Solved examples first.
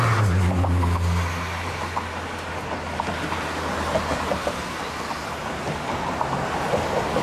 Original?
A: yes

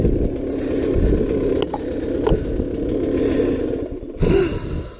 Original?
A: yes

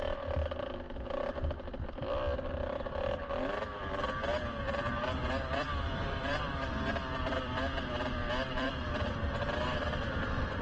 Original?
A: no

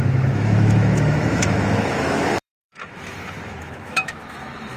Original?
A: no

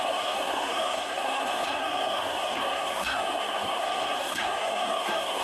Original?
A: no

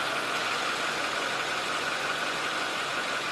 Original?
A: no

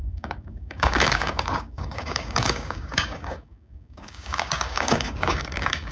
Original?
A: no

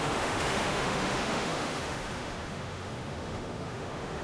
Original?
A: no